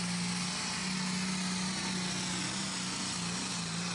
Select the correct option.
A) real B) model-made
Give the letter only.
A